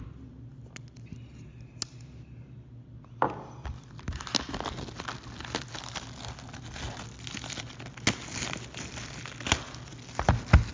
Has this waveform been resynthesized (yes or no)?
no